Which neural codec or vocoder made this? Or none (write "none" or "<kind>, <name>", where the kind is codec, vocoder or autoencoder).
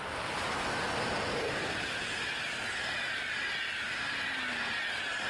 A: none